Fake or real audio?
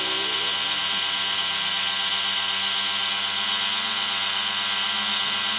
real